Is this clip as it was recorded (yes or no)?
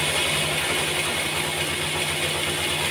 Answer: yes